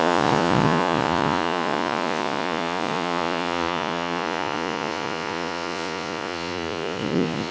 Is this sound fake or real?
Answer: fake